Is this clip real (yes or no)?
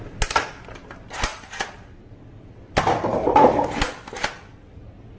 yes